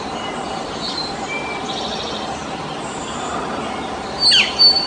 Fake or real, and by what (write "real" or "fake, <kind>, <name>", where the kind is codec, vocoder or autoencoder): real